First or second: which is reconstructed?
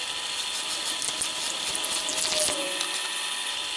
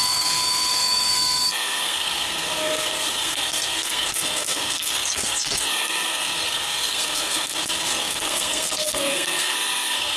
second